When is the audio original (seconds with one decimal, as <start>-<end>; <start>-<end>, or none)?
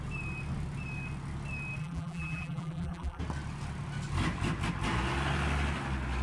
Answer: 0.0-1.8; 3.2-6.2